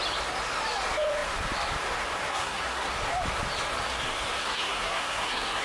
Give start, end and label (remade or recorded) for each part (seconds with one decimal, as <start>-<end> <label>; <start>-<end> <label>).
0.0-2.3 recorded; 2.3-2.9 remade; 2.9-4.4 recorded; 4.4-5.6 remade